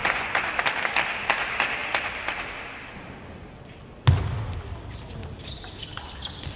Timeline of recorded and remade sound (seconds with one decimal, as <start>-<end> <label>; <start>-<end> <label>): 0.0-0.5 remade; 0.5-6.6 recorded